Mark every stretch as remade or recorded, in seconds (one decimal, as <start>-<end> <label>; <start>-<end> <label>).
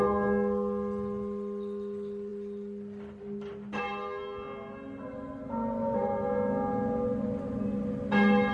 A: 0.0-8.5 recorded